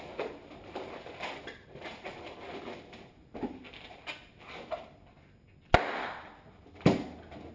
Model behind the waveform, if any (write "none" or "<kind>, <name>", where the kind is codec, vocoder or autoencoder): none